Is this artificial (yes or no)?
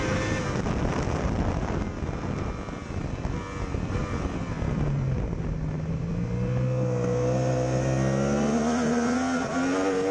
no